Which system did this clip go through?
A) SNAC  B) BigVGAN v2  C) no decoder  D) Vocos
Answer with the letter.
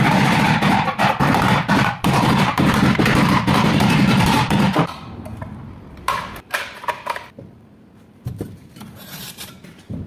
B